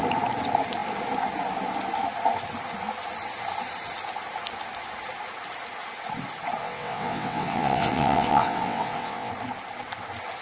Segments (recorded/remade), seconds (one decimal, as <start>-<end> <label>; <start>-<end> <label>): 0.0-6.6 recorded; 6.6-9.3 remade; 9.3-10.4 recorded